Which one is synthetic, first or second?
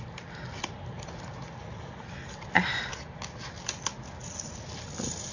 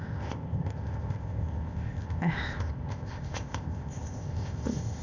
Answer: second